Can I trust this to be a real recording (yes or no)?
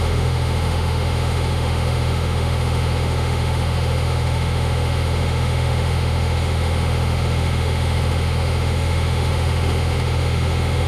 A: no